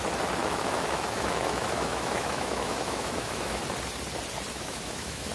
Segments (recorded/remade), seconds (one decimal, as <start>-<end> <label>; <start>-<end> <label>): 0.0-0.4 recorded; 0.4-3.6 remade; 3.6-4.5 recorded; 4.5-5.3 remade